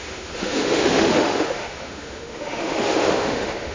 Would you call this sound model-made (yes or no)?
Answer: yes